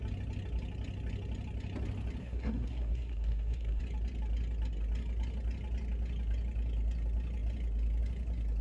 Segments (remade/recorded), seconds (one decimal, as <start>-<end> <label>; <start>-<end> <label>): 0.0-2.2 recorded; 2.2-3.8 remade; 3.8-8.6 recorded